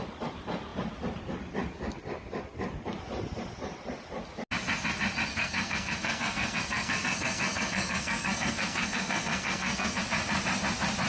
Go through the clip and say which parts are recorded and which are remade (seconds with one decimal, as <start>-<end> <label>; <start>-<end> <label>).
0.0-5.3 recorded; 5.3-10.0 remade; 10.0-11.1 recorded